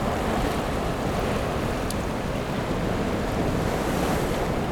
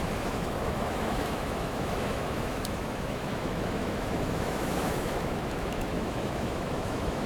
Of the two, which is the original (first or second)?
first